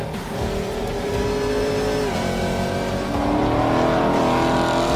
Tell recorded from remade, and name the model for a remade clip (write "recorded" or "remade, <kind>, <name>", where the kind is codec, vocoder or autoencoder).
recorded